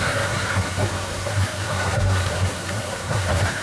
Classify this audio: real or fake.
fake